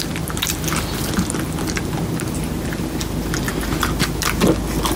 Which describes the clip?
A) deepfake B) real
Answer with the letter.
B